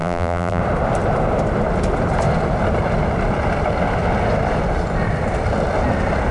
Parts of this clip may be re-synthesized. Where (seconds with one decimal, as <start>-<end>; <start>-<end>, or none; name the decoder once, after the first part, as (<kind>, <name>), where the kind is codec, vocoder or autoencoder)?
0.0-0.6 (vocoder, BigVGAN v2)